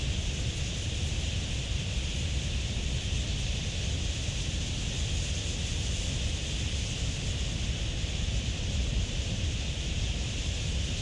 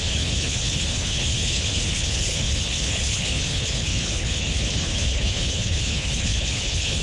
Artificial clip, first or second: second